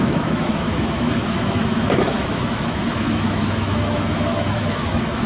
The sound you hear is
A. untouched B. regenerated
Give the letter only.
B